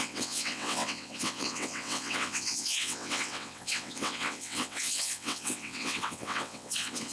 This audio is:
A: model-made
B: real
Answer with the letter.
A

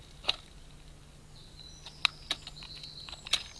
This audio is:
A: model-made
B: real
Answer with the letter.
B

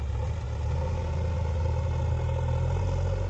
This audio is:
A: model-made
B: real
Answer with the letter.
B